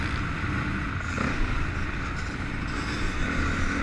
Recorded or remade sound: recorded